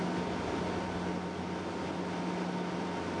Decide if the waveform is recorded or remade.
recorded